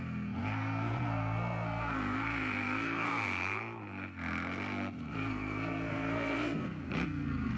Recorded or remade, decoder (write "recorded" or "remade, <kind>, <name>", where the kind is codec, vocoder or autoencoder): remade, codec, SNAC